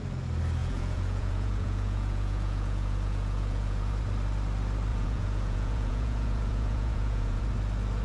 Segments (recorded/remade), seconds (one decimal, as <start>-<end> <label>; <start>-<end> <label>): 0.0-0.6 recorded; 0.6-3.9 remade; 3.9-4.9 recorded; 4.9-7.4 remade; 7.4-8.0 recorded